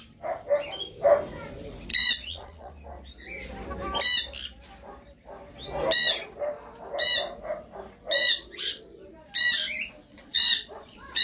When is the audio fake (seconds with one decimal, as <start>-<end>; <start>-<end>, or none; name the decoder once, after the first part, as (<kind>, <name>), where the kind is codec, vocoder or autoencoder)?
1.9-2.7 (vocoder, Vocos); 8.2-8.8; 10.1-11.2